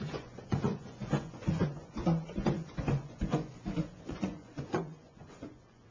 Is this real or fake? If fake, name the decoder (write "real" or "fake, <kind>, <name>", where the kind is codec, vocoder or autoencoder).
fake, vocoder, Vocos